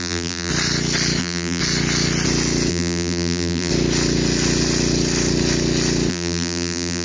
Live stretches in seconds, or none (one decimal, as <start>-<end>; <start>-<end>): 0.5-1.2; 1.6-2.7; 3.7-6.1